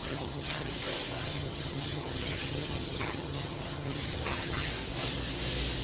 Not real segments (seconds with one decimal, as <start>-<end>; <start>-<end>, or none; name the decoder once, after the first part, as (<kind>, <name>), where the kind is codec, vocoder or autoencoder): 0.0-0.7 (vocoder, HiFi-GAN); 1.2-4.7

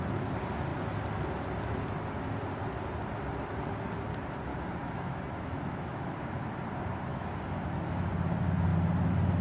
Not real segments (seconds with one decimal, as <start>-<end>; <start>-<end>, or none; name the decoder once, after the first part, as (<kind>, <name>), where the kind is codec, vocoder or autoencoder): 4.5-6.1 (autoencoder, DAC-VAE); 7.1-8.1

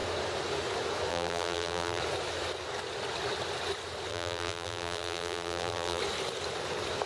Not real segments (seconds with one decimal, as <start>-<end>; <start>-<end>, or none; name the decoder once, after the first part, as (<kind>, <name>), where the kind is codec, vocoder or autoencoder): 1.1-2.0 (vocoder, BigVGAN v2); 4.1-6.0

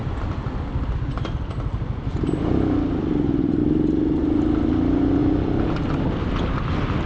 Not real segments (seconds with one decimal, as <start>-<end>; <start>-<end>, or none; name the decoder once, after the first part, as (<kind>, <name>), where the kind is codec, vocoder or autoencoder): 0.0-3.6 (vocoder, BigVGAN v2); 4.2-7.1